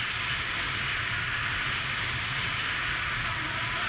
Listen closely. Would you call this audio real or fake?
real